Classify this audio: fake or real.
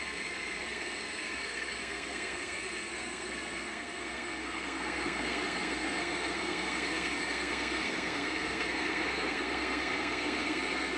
fake